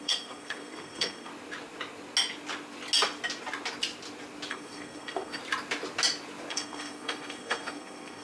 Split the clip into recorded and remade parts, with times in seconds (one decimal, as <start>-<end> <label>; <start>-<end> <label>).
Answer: 0.0-1.3 remade; 1.3-4.5 recorded; 4.5-5.4 remade; 5.4-6.5 recorded; 6.5-8.2 remade